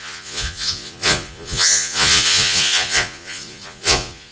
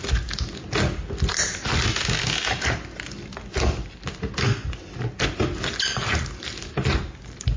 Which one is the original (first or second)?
second